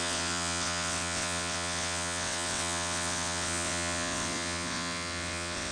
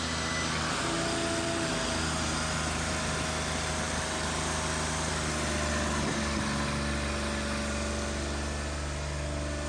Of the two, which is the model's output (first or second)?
first